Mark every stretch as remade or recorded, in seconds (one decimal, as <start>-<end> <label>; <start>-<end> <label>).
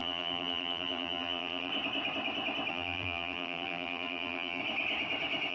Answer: 0.0-1.7 remade; 1.7-2.7 recorded; 2.7-4.6 remade; 4.6-5.5 recorded